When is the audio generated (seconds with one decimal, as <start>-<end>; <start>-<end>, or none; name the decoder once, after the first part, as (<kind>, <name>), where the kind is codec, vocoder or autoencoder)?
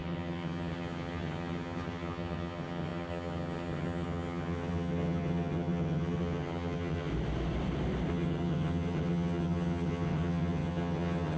0.0-7.1 (vocoder, HiFi-GAN); 8.1-11.4